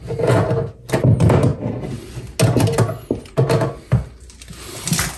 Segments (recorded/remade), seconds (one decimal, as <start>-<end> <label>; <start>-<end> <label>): 0.0-5.2 recorded